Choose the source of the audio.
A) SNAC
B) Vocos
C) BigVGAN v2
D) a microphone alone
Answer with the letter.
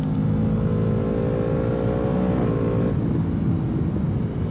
D